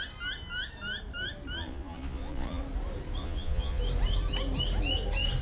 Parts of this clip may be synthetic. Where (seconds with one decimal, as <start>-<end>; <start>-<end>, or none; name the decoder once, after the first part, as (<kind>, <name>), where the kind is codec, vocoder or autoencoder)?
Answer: 1.6-2.6 (vocoder, Vocos); 3.2-3.8